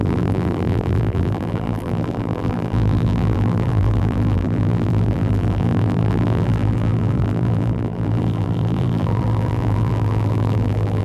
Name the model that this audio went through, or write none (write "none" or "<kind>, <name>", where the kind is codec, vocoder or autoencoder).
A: vocoder, BigVGAN v2